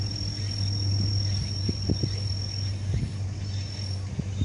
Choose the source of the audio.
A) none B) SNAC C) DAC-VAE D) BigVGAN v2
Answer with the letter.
A